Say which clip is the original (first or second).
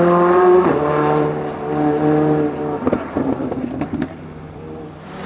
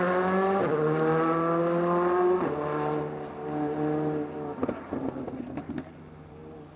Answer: second